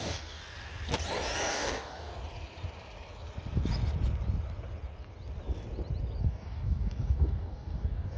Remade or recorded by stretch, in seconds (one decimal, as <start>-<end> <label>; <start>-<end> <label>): 0.0-0.4 remade; 0.4-1.5 recorded; 1.5-2.1 remade; 2.1-6.2 recorded; 6.2-8.2 remade